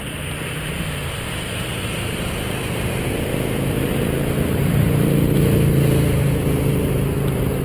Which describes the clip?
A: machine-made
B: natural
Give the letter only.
A